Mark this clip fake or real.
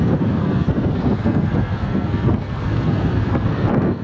fake